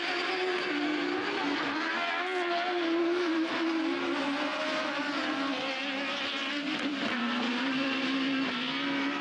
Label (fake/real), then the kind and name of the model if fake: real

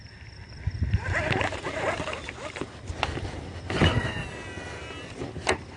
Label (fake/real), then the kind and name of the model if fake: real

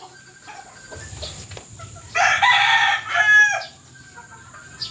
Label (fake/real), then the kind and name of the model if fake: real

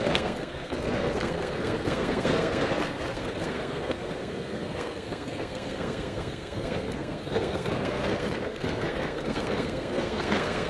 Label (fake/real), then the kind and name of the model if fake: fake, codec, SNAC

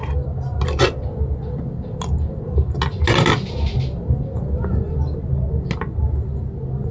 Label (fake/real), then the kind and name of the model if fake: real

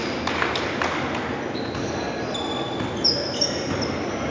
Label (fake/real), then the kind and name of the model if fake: real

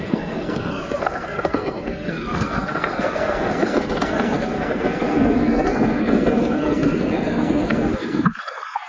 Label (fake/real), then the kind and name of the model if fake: fake, codec, SNAC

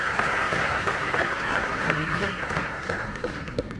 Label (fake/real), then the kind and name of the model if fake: fake, codec, SNAC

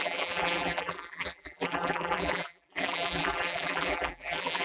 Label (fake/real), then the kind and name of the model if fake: fake, vocoder, BigVGAN v2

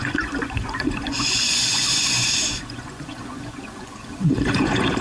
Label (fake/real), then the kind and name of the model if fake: fake, vocoder, Vocos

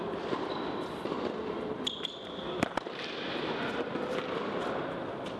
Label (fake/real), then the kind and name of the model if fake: real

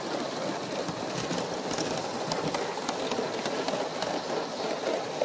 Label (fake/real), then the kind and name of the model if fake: real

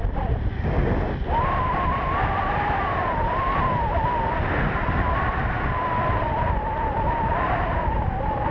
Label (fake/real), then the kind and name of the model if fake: real